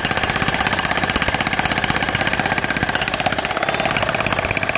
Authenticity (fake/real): real